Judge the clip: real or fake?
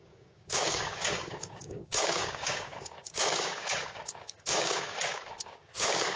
fake